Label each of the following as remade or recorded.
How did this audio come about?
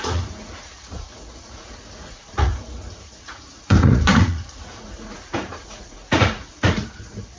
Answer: remade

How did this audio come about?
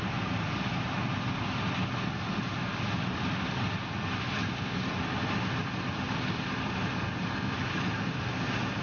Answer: recorded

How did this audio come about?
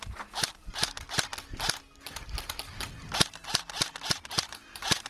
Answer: recorded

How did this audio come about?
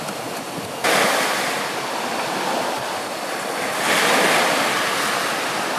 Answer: recorded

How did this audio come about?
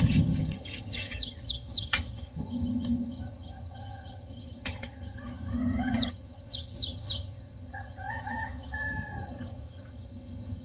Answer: remade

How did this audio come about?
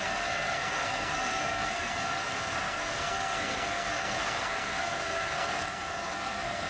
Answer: remade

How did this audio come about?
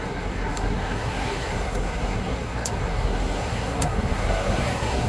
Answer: remade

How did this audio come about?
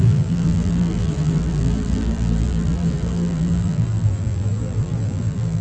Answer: remade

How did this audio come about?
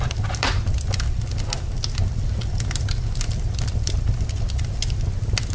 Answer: recorded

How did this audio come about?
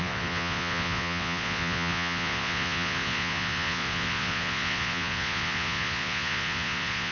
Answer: remade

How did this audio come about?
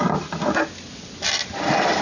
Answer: recorded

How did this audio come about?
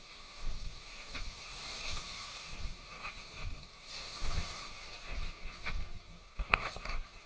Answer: remade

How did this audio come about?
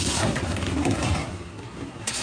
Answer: remade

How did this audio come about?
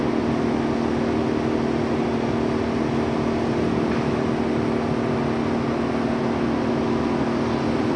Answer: recorded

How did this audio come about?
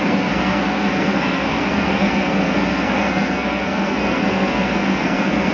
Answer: remade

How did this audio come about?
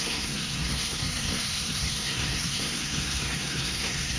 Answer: remade